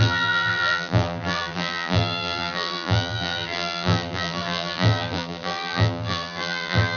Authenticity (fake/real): fake